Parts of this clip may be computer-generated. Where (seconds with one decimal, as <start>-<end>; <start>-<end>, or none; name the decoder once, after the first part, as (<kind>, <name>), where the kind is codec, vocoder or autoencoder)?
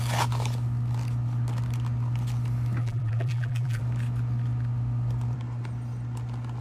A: 2.8-3.8 (vocoder, BigVGAN v2)